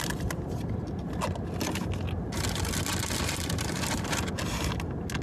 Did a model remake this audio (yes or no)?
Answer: no